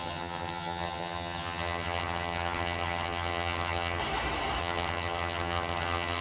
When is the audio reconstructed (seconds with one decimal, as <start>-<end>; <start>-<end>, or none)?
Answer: 0.0-4.0; 4.6-6.2